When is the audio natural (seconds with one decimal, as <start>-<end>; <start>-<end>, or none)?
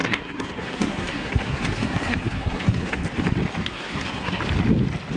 3.1-3.6; 4.4-5.2